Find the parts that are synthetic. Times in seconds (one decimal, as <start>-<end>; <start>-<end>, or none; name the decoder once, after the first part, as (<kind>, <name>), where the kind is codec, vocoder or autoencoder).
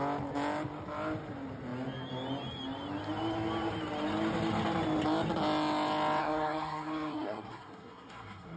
6.2-8.6 (codec, SNAC)